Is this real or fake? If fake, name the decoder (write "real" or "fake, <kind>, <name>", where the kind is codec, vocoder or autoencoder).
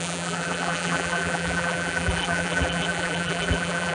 fake, vocoder, BigVGAN v2